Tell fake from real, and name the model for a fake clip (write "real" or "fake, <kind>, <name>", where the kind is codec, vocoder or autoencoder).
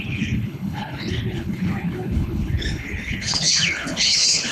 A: fake, codec, HILCodec